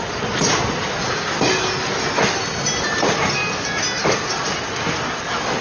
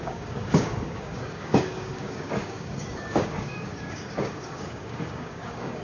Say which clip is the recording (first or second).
first